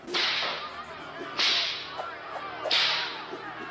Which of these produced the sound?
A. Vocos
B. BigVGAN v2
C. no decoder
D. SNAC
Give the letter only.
C